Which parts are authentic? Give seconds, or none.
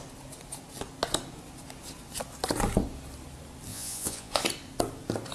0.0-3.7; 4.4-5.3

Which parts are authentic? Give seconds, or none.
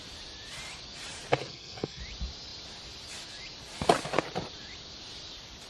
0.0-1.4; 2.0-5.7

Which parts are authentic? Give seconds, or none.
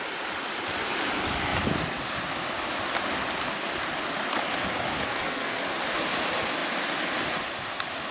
0.0-5.0; 5.6-8.1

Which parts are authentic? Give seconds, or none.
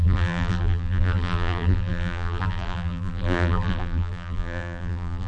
none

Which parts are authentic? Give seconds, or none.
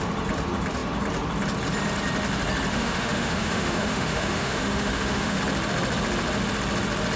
0.0-2.7; 5.4-7.2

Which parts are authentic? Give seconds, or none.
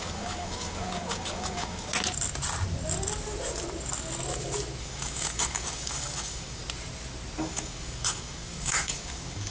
1.9-4.8; 6.6-7.4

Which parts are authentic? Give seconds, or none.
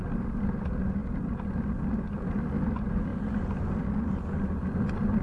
0.0-3.1; 4.0-5.2